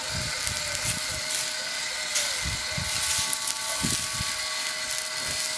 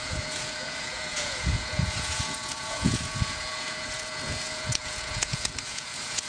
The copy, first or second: second